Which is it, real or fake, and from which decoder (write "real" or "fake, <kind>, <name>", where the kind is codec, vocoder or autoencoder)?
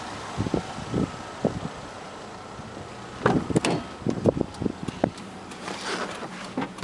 real